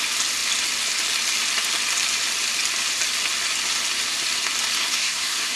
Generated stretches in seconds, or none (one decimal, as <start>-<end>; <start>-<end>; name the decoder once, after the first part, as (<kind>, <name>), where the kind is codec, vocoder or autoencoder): 4.8-5.6 (codec, SNAC)